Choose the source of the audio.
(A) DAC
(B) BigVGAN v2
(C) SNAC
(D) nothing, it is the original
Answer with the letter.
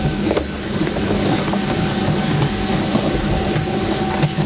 A